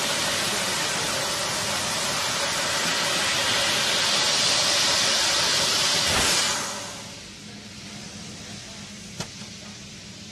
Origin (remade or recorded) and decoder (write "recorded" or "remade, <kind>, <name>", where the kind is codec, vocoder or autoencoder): recorded